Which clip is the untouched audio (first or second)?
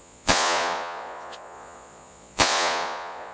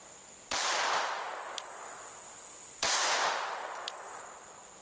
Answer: second